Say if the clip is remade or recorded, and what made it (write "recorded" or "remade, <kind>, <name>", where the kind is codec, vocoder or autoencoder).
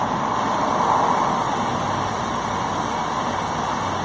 recorded